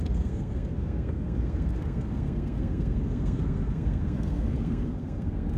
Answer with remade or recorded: remade